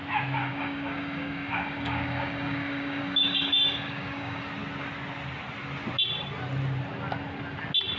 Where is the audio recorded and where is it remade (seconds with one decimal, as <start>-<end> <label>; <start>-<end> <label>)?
0.0-0.4 recorded; 0.4-4.4 remade; 4.4-8.0 recorded